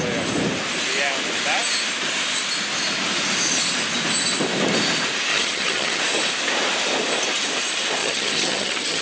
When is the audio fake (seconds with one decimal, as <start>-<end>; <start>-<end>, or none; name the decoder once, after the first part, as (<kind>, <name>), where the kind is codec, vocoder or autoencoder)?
5.3-6.0 (vocoder, HiFi-GAN); 8.0-9.0